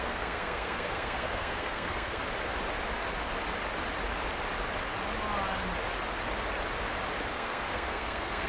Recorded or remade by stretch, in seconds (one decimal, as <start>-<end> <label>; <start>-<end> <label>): 0.0-2.2 remade; 2.2-7.3 recorded; 7.3-8.5 remade